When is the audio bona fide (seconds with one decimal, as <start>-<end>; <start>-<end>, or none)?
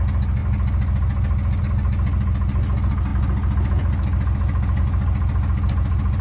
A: 0.0-6.2